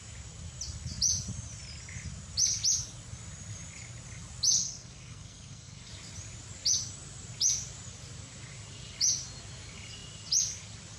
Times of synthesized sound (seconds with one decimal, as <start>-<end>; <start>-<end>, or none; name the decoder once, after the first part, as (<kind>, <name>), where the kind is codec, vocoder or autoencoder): 4.6-5.9 (codec, SNAC)